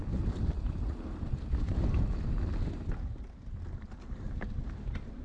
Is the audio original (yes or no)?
no